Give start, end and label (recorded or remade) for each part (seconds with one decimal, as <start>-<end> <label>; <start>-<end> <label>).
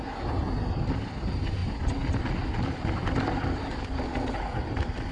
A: 0.0-5.1 recorded